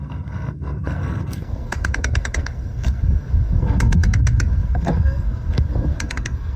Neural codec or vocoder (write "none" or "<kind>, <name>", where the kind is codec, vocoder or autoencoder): codec, SNAC